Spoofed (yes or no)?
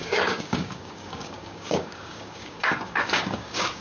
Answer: yes